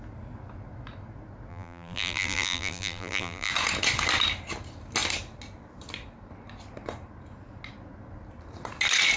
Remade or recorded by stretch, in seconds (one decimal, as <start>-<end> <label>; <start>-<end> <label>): 0.0-1.5 recorded; 1.5-3.5 remade; 3.5-9.2 recorded

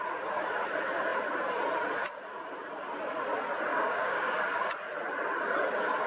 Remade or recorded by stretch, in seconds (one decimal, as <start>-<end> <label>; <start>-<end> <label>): 0.0-3.7 recorded; 3.7-4.4 remade; 4.4-6.1 recorded

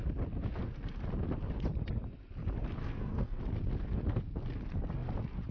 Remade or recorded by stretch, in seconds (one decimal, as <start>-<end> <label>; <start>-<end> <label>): 0.0-2.8 recorded; 2.8-3.4 remade; 3.4-5.5 recorded

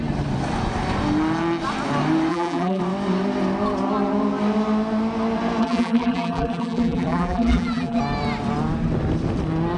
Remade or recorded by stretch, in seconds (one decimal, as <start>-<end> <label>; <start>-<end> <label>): 0.0-2.3 recorded; 2.3-2.8 remade; 2.8-5.6 recorded; 5.6-8.0 remade; 8.0-9.8 recorded

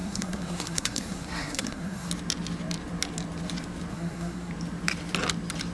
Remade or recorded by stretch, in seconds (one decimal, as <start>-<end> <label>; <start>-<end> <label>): 0.0-2.1 remade; 2.1-3.9 recorded; 3.9-4.5 remade; 4.5-5.7 recorded

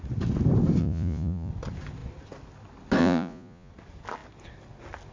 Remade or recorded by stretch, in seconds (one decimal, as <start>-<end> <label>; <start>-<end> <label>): 0.0-0.8 recorded; 0.8-1.5 remade; 1.5-3.0 recorded; 3.0-3.7 remade; 3.7-5.1 recorded

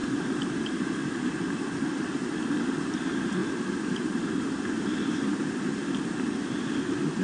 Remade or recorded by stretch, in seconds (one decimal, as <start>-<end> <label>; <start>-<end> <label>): 0.0-3.0 remade; 3.0-3.4 recorded; 3.4-6.6 remade; 6.6-7.2 recorded